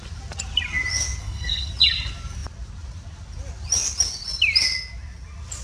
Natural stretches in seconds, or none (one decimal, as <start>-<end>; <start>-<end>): 0.0-1.2; 1.7-5.6